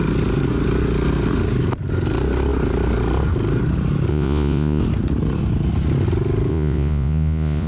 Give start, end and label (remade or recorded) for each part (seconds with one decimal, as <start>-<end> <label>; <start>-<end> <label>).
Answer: 0.0-4.1 recorded; 4.1-4.8 remade; 4.8-6.5 recorded; 6.5-7.7 remade